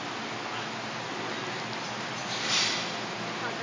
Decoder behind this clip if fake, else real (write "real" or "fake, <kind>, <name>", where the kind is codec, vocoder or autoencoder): real